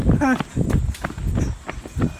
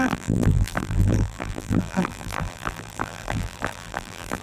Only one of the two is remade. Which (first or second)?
second